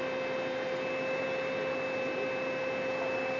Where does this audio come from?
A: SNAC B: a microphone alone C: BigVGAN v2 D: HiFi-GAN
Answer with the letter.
B